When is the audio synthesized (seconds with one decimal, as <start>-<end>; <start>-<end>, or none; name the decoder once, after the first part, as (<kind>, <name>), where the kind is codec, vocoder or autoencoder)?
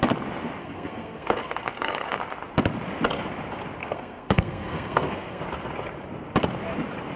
0.6-2.2 (codec, SNAC); 3.8-5.4